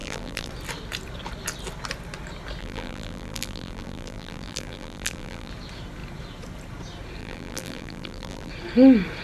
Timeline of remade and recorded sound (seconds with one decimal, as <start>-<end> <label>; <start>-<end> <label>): 0.0-0.5 remade; 0.5-2.6 recorded; 2.6-5.5 remade; 5.5-7.2 recorded; 7.2-8.5 remade; 8.5-9.2 recorded